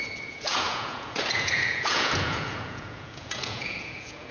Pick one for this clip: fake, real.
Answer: fake